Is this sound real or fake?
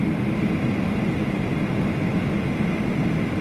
real